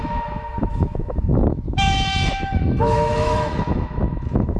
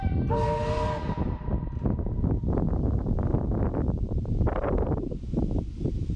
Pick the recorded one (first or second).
second